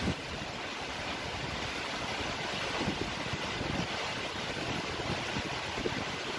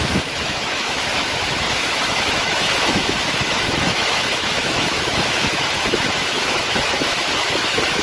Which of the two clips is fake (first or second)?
second